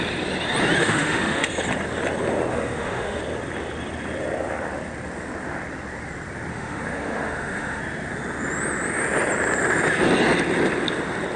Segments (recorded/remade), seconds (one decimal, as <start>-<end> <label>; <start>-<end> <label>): 0.0-0.8 recorded; 0.8-1.5 remade; 1.5-2.5 recorded; 2.5-3.2 remade; 3.2-6.5 recorded; 6.5-7.8 remade; 7.8-11.4 recorded